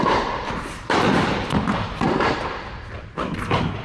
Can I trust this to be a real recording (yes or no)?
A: no